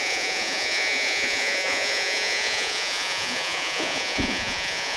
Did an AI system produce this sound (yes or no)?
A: yes